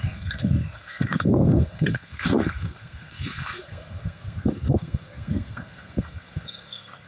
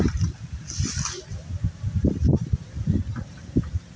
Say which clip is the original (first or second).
second